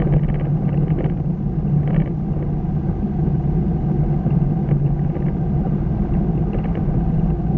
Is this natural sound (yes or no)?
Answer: yes